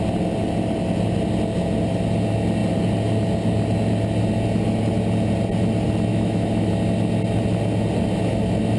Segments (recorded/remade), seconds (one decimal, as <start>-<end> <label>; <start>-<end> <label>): 0.0-6.1 recorded; 6.1-6.7 remade; 6.7-8.8 recorded